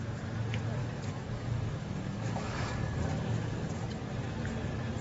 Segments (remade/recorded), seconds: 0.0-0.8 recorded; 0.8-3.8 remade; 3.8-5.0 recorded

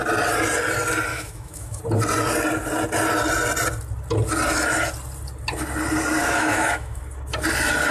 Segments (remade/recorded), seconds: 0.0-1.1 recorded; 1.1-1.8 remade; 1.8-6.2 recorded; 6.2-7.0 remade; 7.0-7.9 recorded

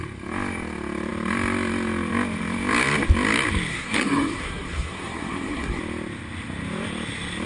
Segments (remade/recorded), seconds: 0.0-3.7 recorded; 3.7-5.8 remade; 5.8-7.5 recorded